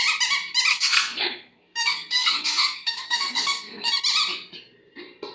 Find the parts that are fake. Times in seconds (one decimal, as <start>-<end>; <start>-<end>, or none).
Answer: 0.7-3.9